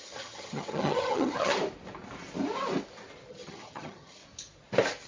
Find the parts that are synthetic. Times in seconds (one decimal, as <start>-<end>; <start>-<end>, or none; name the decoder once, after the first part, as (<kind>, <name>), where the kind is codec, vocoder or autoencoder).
0.0-1.5 (vocoder, HiFi-GAN); 3.3-4.2